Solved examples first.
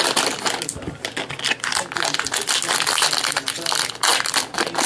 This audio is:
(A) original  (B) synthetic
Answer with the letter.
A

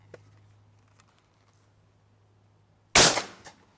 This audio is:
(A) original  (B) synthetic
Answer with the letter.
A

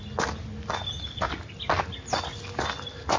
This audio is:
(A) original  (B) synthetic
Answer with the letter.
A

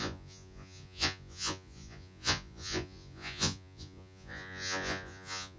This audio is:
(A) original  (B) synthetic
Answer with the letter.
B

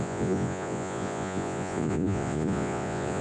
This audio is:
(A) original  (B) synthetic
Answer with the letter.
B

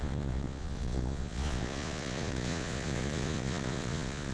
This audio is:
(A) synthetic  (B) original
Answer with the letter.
A